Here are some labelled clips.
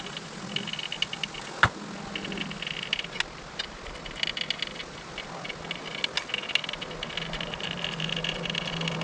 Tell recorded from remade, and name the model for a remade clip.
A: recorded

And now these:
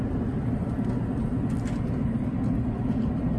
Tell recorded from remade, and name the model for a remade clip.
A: recorded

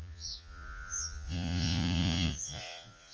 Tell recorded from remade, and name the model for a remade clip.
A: remade, vocoder, Vocos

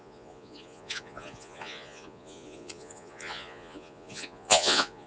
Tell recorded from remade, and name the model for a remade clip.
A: remade, vocoder, Vocos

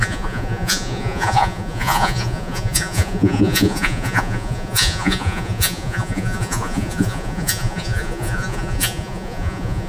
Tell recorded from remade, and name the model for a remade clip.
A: remade, vocoder, Vocos